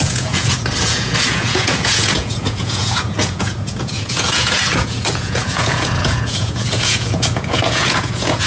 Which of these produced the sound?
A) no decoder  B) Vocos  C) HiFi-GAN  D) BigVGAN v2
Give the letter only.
B